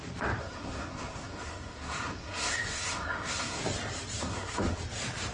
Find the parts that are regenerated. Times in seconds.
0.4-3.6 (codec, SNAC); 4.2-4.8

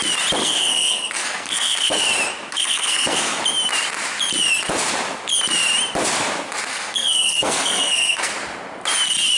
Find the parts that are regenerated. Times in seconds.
0.4-2.1 (codec, SNAC); 2.5-3.4; 6.7-8.3

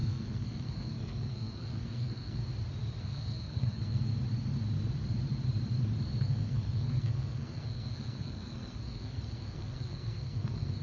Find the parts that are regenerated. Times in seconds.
0.0-2.4 (codec, SNAC); 3.0-4.1; 6.2-10.8

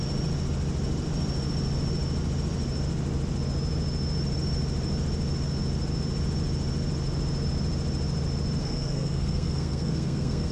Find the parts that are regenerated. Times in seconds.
8.6-10.5 (codec, SNAC)

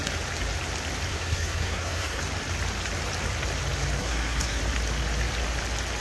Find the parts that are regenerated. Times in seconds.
1.1-2.2 (codec, SNAC); 4.0-4.6

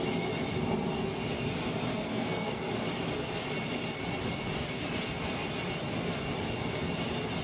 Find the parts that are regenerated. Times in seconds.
2.0-2.6 (codec, SNAC)

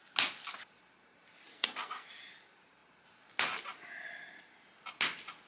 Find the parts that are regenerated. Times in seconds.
1.5-2.1 (codec, SNAC)

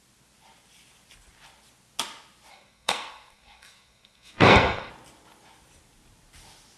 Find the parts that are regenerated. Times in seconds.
2.5-4.9 (codec, SNAC)